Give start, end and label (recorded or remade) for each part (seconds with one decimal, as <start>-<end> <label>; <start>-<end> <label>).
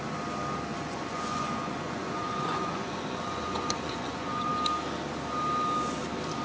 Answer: 0.0-0.7 recorded; 0.7-4.5 remade; 4.5-6.4 recorded